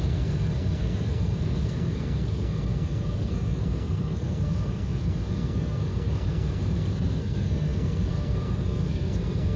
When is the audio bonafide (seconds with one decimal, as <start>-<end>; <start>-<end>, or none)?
none